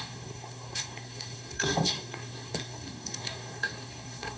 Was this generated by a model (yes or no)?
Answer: yes